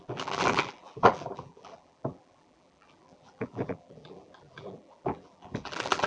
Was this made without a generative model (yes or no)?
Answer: no